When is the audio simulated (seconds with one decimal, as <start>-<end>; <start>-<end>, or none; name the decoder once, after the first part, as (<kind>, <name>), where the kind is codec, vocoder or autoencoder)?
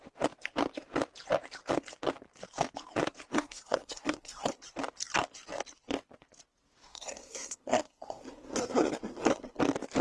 3.3-4.6 (codec, SNAC); 6.9-9.6